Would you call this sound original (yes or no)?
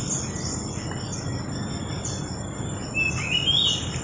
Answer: yes